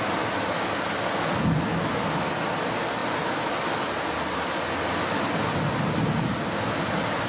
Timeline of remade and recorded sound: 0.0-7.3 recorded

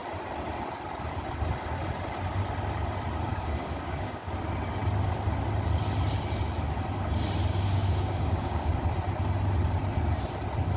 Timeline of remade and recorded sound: 0.0-3.3 recorded; 3.3-4.3 remade; 4.3-7.5 recorded; 7.5-8.7 remade; 8.7-10.8 recorded

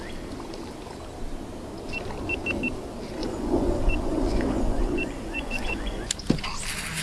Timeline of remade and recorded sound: 0.0-3.2 recorded; 3.2-6.1 remade; 6.1-7.0 recorded

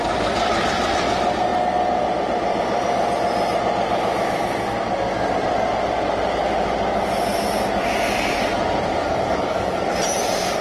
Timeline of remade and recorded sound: 0.0-9.0 recorded; 9.0-9.8 remade; 9.8-10.6 recorded

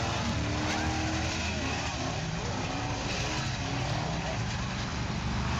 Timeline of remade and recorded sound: 0.0-1.9 recorded; 1.9-3.2 remade; 3.2-4.9 recorded; 4.9-5.6 remade